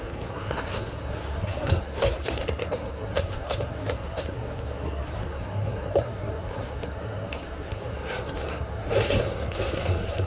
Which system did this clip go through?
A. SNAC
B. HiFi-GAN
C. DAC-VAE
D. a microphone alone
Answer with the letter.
A